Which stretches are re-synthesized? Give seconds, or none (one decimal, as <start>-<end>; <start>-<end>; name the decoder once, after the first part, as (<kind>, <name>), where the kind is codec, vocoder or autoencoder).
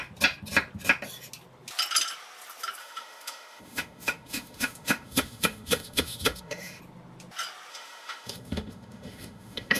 2.8-6.8 (autoencoder, DAC-VAE); 7.7-9.8